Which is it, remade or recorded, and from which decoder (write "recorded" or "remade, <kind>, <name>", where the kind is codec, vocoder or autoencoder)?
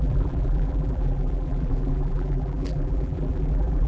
remade, vocoder, BigVGAN v2